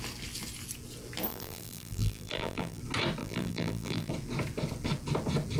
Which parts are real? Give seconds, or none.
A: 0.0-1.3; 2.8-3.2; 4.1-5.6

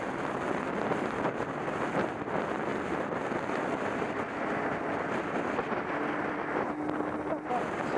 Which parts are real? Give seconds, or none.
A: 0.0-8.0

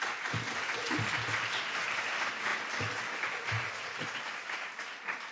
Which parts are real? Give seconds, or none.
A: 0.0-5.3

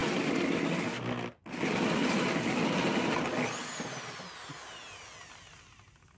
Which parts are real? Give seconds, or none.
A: 0.0-6.2

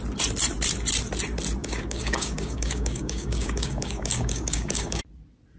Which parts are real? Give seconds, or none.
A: 0.0-1.6; 5.0-5.6

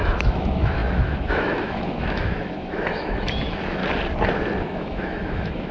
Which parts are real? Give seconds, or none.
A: 3.8-4.6

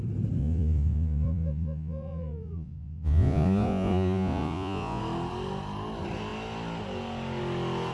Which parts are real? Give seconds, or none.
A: 0.0-0.4; 5.0-7.9

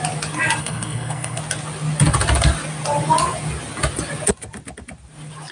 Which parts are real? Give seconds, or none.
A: 0.0-0.6; 1.4-5.5